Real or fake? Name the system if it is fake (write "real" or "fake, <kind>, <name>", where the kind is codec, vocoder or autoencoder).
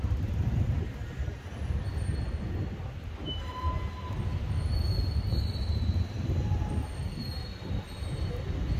real